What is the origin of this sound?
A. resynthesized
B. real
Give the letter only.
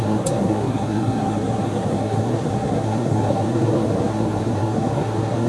A